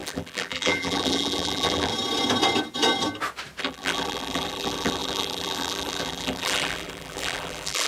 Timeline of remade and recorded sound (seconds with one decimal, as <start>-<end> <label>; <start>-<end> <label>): 0.0-1.9 remade; 1.9-3.6 recorded; 3.6-7.9 remade